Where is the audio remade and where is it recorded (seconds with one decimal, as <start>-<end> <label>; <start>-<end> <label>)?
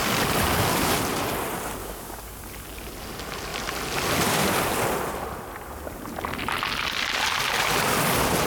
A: 0.0-1.8 recorded; 1.8-2.4 remade; 2.4-8.5 recorded